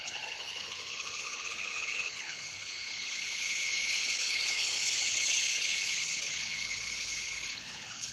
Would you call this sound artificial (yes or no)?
yes